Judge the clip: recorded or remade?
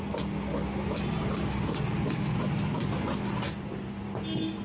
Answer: recorded